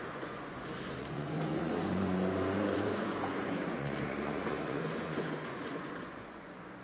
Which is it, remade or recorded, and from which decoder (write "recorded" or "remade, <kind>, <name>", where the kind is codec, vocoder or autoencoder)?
remade, vocoder, Vocos